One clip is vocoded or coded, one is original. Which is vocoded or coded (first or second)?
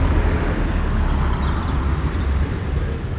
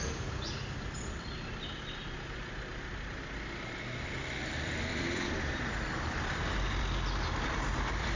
second